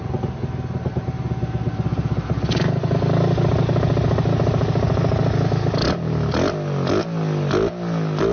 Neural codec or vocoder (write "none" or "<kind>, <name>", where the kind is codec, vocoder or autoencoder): none